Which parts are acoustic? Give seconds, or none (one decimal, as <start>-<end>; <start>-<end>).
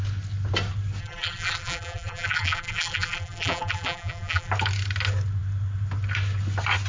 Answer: 0.0-1.0; 4.5-6.9